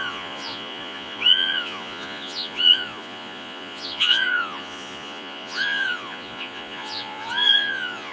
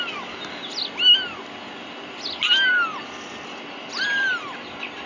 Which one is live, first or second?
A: second